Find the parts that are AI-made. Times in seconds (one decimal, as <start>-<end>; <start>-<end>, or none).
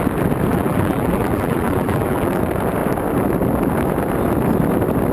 0.5-2.4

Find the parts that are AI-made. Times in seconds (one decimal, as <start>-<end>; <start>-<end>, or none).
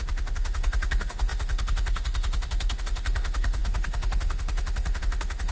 0.0-5.5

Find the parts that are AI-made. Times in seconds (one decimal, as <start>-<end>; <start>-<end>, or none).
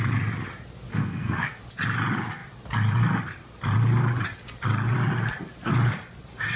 0.9-1.6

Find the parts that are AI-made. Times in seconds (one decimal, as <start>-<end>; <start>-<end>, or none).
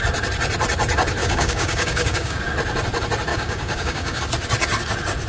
1.2-2.4; 3.3-4.2